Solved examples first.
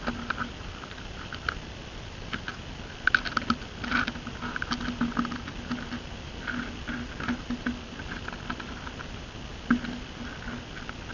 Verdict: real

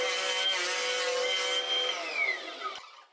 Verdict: real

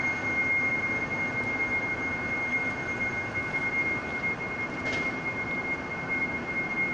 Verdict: real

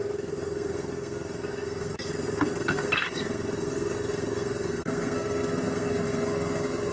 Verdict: fake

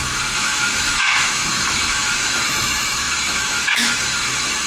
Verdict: fake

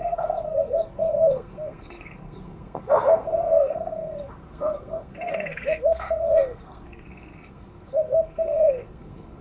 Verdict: fake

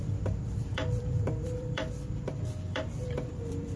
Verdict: fake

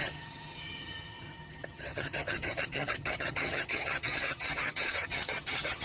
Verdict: fake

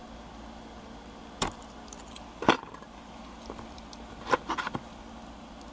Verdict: real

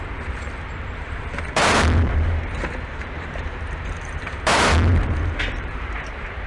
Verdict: fake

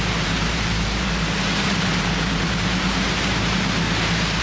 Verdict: fake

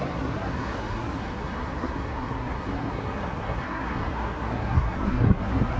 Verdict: fake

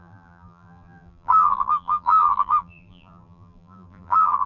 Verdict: fake